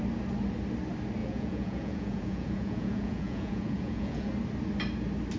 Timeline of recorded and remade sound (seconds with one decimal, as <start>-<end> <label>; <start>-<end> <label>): 0.0-1.2 recorded; 1.2-4.3 remade; 4.3-5.4 recorded